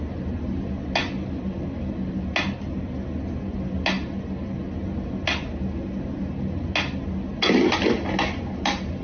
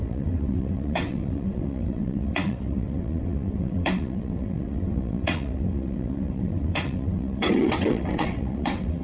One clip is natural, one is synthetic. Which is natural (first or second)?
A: first